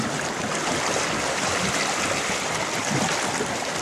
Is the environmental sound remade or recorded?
recorded